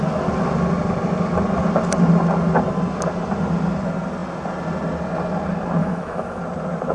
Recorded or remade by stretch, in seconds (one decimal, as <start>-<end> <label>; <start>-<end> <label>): 0.0-5.8 recorded; 5.8-6.4 remade; 6.4-6.9 recorded